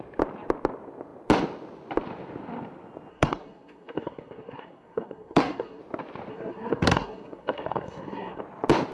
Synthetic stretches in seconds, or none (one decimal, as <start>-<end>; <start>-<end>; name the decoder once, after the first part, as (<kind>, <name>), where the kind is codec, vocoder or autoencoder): 3.1-5.8 (codec, SNAC); 6.3-8.4